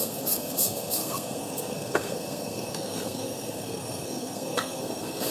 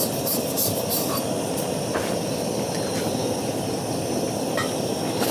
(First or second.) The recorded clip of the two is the second